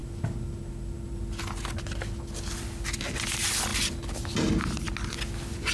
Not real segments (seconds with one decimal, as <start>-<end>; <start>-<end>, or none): none